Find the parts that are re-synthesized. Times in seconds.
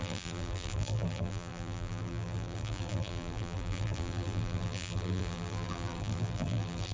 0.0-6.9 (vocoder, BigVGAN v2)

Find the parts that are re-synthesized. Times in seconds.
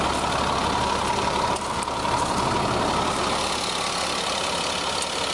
1.0-3.2 (vocoder, BigVGAN v2)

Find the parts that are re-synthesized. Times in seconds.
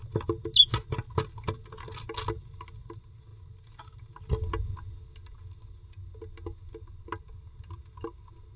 none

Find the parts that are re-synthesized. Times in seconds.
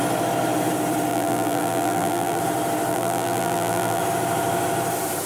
1.1-2.4 (vocoder, BigVGAN v2); 2.9-4.0